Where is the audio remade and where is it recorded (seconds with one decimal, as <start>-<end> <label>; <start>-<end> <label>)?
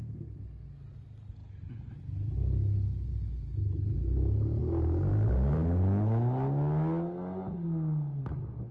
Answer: 0.0-8.7 recorded